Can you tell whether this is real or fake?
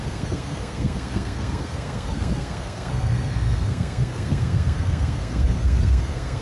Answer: fake